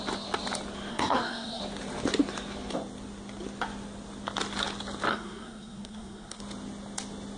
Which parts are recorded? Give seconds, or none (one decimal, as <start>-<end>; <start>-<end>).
0.0-0.9; 1.6-5.1; 6.4-7.4